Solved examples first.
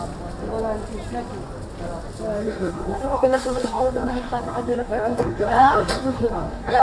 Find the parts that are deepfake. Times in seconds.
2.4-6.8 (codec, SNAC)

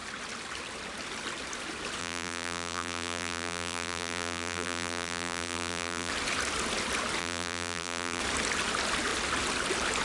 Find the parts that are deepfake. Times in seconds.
2.0-6.1 (vocoder, BigVGAN v2); 7.2-8.2

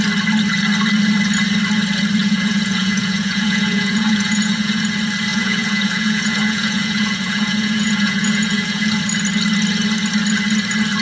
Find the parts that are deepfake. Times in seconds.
2.2-4.8 (vocoder, Vocos); 5.3-9.0

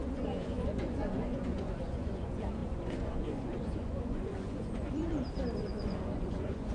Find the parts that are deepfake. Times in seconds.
0.0-5.1 (vocoder, Vocos); 5.6-6.7

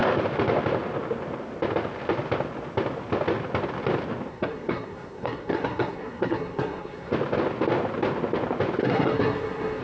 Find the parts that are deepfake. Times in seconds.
4.3-7.1 (codec, SNAC); 8.8-9.8

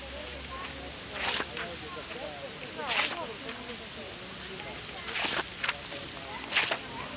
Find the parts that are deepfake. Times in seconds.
none

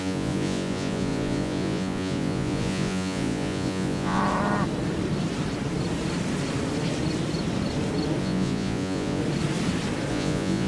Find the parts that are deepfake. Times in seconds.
0.0-4.2 (vocoder, Vocos); 8.2-9.2; 10.1-10.7

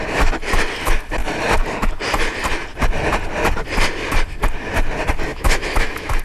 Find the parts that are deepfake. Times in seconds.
5.3-6.2 (autoencoder, DAC-VAE)